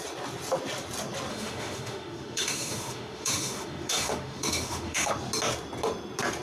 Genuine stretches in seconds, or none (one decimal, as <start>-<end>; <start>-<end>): 0.0-1.3; 5.1-6.4